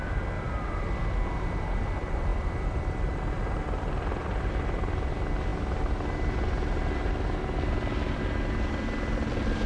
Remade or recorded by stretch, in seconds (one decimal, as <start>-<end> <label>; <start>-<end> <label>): 0.0-9.7 recorded